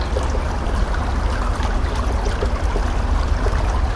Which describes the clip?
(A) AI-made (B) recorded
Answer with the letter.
B